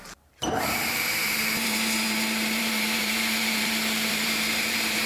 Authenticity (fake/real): fake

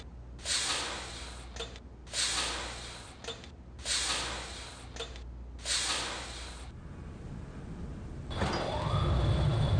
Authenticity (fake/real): real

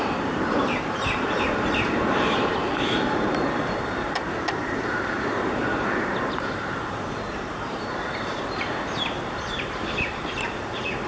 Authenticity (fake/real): fake